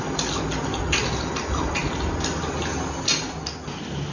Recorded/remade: recorded